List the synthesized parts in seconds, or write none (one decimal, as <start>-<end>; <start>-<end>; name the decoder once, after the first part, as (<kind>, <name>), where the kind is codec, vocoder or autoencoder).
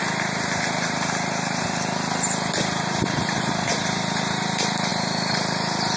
0.0-6.0 (vocoder, BigVGAN v2)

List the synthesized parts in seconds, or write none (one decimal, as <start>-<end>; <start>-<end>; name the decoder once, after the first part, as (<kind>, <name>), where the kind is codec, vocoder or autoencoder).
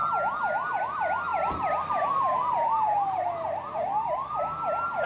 none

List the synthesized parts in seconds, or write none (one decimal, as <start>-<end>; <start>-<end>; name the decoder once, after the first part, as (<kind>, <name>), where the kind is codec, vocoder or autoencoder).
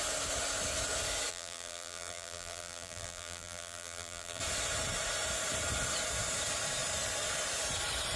1.3-4.4 (vocoder, BigVGAN v2)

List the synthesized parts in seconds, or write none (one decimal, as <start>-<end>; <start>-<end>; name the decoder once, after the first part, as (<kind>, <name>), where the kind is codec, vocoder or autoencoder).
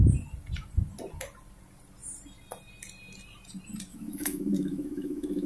3.9-5.5 (autoencoder, DAC-VAE)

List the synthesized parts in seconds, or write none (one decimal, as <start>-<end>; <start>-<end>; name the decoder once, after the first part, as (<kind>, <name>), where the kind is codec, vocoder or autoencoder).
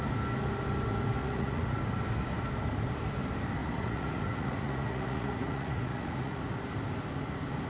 1.2-1.8 (vocoder, Vocos); 3.6-6.4